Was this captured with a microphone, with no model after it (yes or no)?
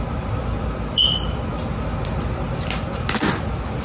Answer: yes